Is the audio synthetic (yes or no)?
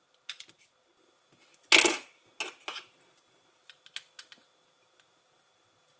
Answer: no